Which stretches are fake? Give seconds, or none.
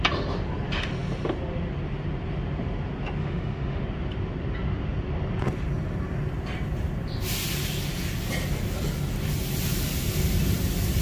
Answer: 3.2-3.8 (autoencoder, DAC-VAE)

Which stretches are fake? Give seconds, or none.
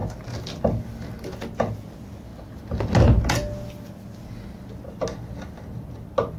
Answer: none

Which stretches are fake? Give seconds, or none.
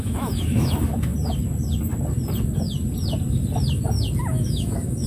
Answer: 0.0-1.1 (autoencoder, DAC-VAE); 4.2-5.1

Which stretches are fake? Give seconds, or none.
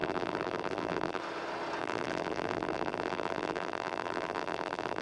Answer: 0.0-1.2 (vocoder, BigVGAN v2); 1.8-5.0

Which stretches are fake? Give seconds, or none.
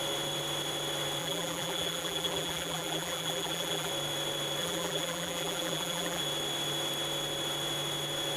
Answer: 1.2-3.9 (vocoder, BigVGAN v2); 4.6-6.2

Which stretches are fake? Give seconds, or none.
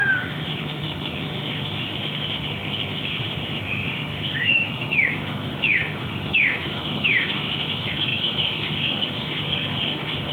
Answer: 0.0-10.3 (autoencoder, DAC-VAE)